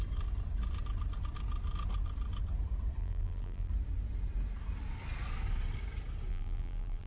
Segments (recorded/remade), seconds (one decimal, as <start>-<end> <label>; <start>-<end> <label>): 0.0-3.0 recorded; 3.0-3.7 remade; 3.7-6.3 recorded; 6.3-7.1 remade